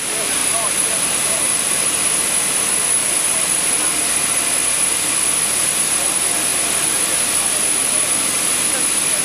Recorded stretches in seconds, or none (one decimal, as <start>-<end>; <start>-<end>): 0.0-0.4; 2.1-3.0; 3.6-9.2